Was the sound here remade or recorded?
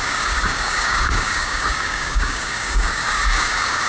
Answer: remade